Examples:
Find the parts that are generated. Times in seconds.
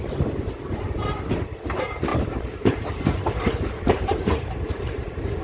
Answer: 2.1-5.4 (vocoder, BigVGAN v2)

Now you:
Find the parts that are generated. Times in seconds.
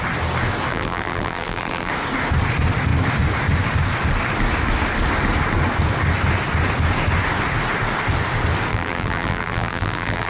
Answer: 0.7-1.9 (vocoder, BigVGAN v2); 8.7-10.3